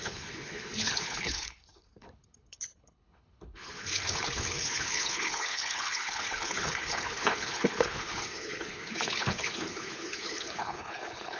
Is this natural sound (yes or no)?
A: no